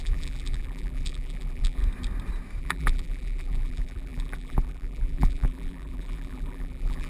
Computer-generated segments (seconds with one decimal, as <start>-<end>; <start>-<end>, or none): 0.0-1.8; 2.6-7.1